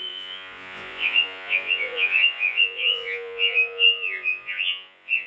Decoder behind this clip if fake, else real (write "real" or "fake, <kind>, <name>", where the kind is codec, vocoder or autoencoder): fake, vocoder, Vocos